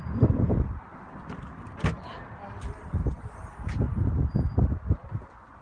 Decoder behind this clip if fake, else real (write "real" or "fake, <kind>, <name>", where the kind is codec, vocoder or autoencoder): real